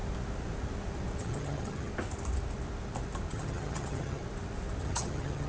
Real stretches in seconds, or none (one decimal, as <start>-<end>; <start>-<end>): 0.0-1.2; 1.9-3.3; 4.2-4.8